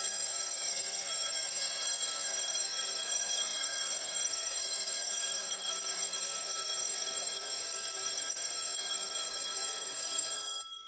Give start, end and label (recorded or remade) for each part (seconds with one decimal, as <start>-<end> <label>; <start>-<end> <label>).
0.0-10.9 remade